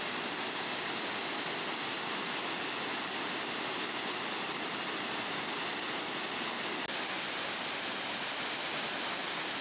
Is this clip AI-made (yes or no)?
no